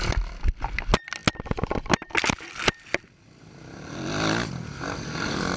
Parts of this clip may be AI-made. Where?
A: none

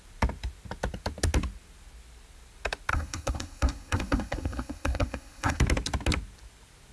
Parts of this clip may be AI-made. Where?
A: 2.9-5.6 (codec, SNAC)